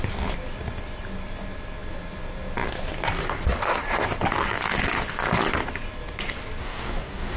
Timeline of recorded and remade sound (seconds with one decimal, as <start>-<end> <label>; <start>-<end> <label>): 0.0-6.6 recorded; 6.6-7.4 remade